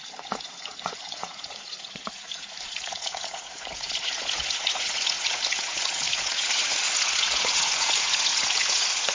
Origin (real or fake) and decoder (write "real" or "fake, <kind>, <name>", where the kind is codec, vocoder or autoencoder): fake, vocoder, Vocos